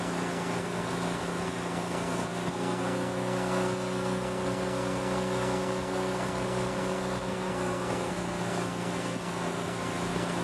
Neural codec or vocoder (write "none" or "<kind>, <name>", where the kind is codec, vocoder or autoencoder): codec, SNAC